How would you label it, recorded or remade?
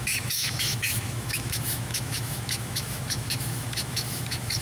remade